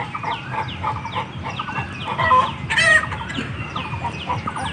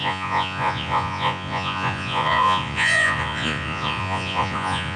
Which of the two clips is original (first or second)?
first